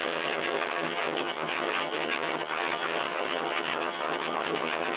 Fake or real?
fake